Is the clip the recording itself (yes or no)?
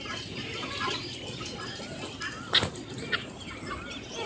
yes